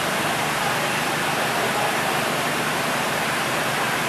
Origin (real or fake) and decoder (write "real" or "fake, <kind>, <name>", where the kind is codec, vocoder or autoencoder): real